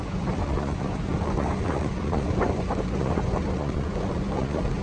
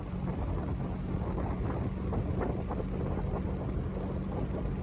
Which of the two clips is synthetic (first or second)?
first